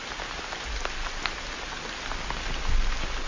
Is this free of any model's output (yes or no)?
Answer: yes